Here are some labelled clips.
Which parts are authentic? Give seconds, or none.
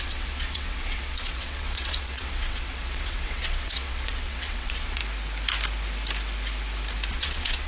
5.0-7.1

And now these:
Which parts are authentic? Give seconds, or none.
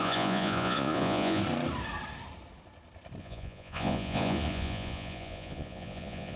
1.4-3.2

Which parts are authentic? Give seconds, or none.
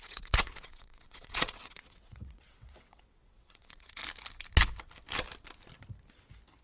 4.0-6.6